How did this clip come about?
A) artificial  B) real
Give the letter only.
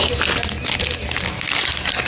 B